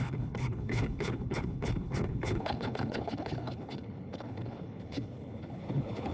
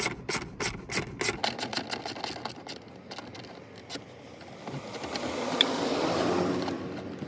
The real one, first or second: second